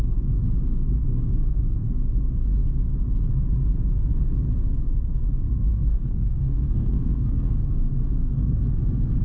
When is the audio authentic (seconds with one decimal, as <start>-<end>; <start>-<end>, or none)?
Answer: 0.0-1.0; 1.6-5.7; 7.5-8.0; 8.6-9.2